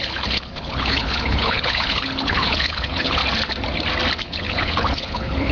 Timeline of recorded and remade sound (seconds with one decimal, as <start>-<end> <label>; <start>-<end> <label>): 0.0-3.2 remade; 3.2-4.2 recorded; 4.2-5.5 remade

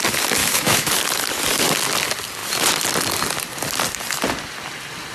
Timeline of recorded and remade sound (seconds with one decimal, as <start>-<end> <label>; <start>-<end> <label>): 0.0-0.4 recorded; 0.4-0.9 remade; 0.9-5.1 recorded

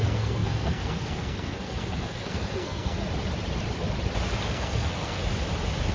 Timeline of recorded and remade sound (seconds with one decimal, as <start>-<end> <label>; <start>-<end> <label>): 0.0-3.0 remade; 3.0-4.5 recorded; 4.5-5.2 remade; 5.2-5.9 recorded

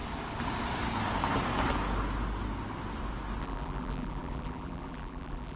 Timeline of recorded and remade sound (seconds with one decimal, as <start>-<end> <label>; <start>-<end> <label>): 0.0-3.4 recorded; 3.4-5.6 remade

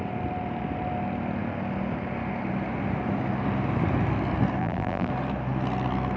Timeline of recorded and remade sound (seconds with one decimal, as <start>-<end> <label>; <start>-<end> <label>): 0.0-4.6 recorded; 4.6-5.1 remade; 5.1-6.2 recorded

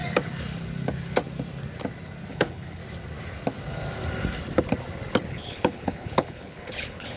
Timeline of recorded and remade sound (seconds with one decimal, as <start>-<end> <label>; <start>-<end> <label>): 0.0-2.3 recorded; 2.3-2.8 remade; 2.8-5.3 recorded; 5.3-7.2 remade

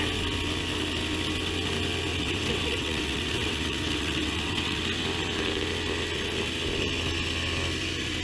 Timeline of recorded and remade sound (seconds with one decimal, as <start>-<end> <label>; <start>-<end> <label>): 0.0-2.1 recorded; 2.1-4.8 remade; 4.8-8.2 recorded

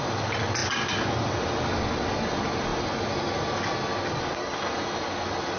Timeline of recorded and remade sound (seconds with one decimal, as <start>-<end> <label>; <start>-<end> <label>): 0.0-5.6 recorded